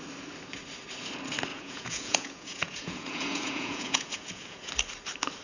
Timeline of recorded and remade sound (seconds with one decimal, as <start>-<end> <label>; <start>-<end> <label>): 0.0-1.5 recorded; 1.5-4.7 remade; 4.7-5.4 recorded